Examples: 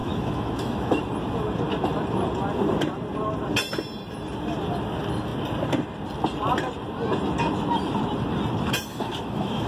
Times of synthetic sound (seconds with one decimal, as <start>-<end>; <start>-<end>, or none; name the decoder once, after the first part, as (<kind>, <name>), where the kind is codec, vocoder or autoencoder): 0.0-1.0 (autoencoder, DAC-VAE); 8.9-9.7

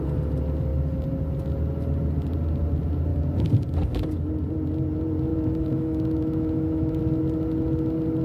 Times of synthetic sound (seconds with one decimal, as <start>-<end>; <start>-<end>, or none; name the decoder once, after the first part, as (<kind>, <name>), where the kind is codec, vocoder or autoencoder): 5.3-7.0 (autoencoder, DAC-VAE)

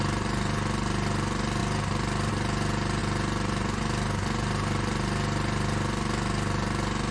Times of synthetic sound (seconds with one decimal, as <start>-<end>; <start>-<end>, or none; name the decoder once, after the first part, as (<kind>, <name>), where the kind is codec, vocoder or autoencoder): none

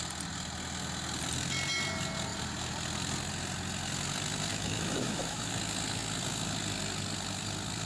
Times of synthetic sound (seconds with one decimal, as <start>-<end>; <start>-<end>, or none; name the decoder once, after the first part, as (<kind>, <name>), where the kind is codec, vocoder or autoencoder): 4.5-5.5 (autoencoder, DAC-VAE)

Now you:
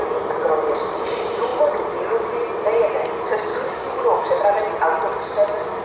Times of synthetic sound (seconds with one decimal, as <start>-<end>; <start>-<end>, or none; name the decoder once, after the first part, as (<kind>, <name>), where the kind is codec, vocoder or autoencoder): 3.5-4.4 (autoencoder, DAC-VAE)